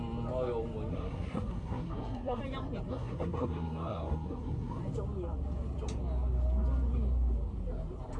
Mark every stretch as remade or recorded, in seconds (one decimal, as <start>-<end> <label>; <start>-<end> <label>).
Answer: 0.0-0.9 recorded; 0.9-2.4 remade; 2.4-2.9 recorded; 2.9-4.8 remade; 4.8-8.2 recorded